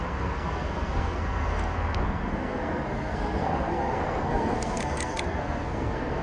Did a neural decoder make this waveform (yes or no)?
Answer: yes